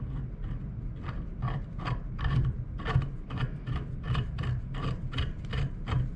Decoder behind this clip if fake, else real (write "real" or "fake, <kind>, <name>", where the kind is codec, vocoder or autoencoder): real